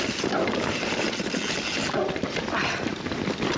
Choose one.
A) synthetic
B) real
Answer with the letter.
B